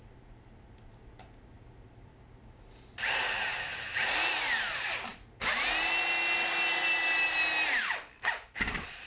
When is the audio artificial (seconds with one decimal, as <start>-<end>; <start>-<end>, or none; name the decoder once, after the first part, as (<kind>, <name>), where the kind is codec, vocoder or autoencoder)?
none